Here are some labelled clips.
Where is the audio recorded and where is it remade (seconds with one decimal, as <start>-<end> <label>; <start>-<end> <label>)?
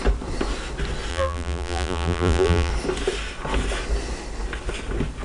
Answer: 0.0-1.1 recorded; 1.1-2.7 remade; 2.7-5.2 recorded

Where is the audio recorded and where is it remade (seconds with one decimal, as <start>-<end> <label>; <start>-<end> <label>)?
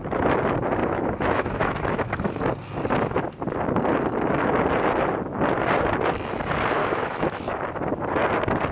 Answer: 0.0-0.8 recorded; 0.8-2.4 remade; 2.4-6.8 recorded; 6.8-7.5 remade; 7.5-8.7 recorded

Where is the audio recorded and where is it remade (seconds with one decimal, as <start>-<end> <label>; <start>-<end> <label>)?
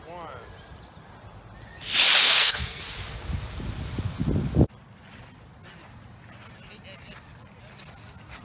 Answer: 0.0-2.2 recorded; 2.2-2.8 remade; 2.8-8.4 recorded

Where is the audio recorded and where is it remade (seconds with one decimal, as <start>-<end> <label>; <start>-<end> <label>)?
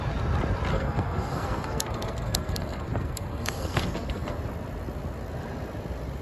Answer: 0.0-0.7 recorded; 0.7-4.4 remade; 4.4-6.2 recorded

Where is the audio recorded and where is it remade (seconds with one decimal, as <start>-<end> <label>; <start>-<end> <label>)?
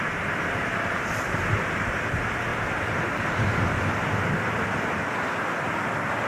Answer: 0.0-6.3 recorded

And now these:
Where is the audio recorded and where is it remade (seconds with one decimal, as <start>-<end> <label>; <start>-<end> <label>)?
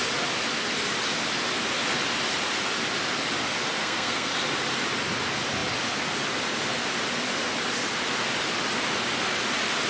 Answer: 0.0-3.8 recorded; 3.8-4.3 remade; 4.3-9.9 recorded